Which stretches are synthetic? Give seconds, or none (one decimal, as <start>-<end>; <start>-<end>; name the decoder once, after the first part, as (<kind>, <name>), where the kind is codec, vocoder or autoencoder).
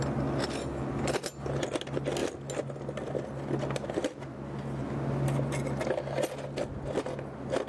none